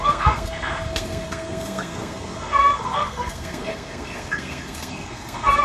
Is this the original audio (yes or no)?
no